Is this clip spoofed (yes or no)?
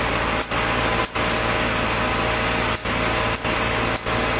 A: no